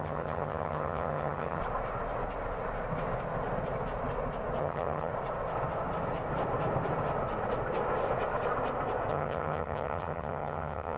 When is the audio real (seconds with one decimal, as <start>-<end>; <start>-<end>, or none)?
1.6-4.6; 5.1-9.1